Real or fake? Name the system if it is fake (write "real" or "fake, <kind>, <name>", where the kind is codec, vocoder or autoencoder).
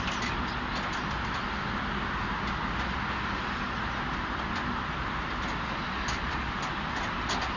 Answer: real